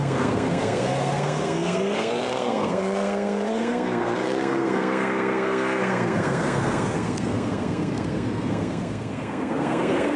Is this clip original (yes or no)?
no